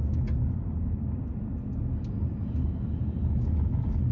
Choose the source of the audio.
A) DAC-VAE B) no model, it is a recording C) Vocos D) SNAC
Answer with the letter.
B